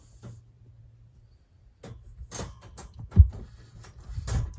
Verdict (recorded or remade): recorded